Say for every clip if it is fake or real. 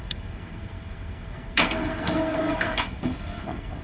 fake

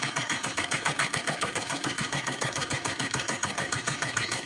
fake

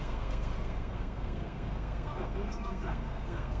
fake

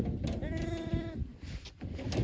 real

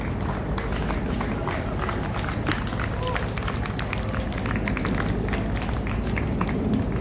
real